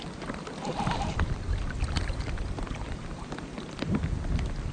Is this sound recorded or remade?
recorded